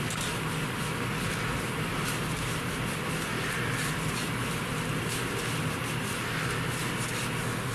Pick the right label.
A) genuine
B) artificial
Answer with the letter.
A